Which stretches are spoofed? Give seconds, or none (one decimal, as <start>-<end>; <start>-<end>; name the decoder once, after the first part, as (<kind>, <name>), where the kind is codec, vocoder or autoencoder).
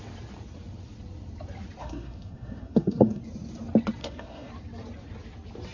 1.8-3.2 (codec, SNAC); 4.0-4.5